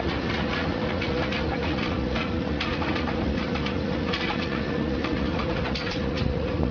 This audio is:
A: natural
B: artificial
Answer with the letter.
B